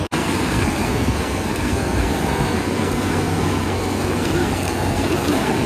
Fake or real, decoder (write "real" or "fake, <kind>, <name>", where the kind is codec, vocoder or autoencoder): fake, codec, SNAC